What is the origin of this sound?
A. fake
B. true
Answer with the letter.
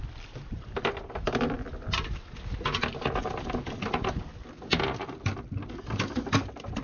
B